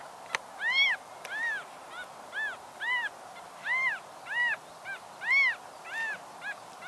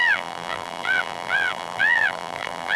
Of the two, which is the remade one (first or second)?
second